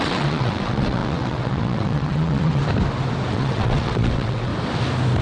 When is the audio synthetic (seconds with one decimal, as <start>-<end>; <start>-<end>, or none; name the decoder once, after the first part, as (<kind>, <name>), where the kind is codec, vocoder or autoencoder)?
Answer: 0.0-2.6 (vocoder, WaveNeXt); 3.3-4.5

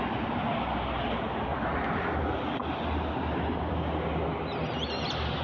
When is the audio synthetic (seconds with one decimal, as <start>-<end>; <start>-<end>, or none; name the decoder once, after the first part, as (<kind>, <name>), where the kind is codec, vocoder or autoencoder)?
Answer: none

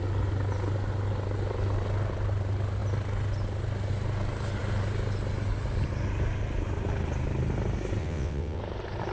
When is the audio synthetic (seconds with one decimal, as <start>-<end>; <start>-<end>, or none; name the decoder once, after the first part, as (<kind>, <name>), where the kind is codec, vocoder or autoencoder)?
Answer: 8.0-8.6 (vocoder, WaveNeXt)

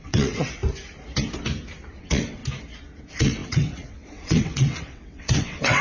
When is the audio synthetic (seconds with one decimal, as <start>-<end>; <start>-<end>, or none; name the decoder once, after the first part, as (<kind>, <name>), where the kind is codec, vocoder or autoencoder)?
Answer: 0.0-0.6 (vocoder, WaveNeXt); 1.9-2.4; 3.0-5.8

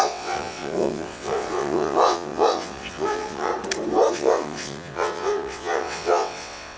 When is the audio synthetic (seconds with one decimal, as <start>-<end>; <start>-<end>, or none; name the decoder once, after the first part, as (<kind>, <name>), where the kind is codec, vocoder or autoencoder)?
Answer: 0.0-3.5 (vocoder, WaveNeXt); 4.1-6.8